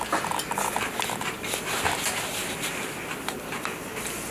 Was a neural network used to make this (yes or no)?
no